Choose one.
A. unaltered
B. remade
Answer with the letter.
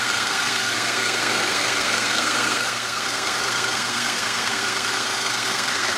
B